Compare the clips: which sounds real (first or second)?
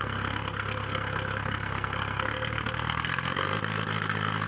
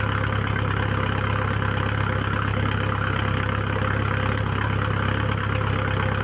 second